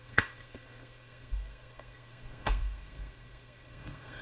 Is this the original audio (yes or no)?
no